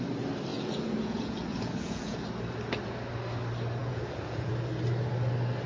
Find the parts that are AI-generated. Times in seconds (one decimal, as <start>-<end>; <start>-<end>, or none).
0.5-2.2; 3.8-4.5